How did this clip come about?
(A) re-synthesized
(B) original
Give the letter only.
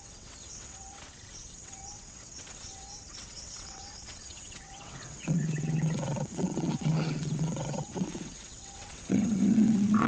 A